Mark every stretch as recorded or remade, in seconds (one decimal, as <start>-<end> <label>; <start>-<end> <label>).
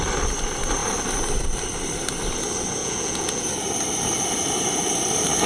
0.0-2.8 recorded; 2.8-3.5 remade; 3.5-5.5 recorded